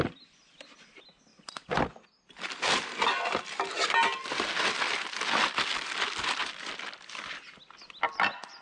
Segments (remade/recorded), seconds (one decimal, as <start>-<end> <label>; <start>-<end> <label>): 0.0-1.3 recorded; 1.3-3.7 remade; 3.7-8.6 recorded